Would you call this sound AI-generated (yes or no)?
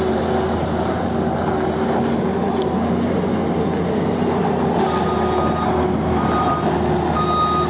no